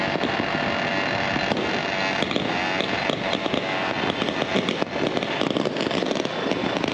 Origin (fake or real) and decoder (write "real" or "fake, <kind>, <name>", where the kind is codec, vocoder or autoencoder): real